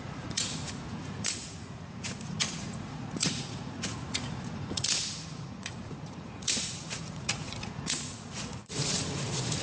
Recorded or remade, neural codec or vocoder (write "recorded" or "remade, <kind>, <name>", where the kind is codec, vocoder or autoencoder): remade, vocoder, Vocos